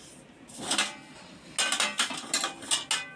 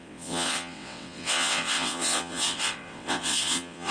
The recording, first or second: first